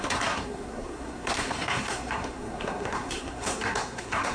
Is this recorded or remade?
remade